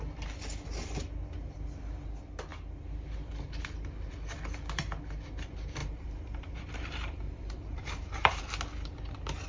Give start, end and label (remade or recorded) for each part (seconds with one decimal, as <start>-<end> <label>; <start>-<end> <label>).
0.0-5.8 recorded; 5.8-8.4 remade; 8.4-9.5 recorded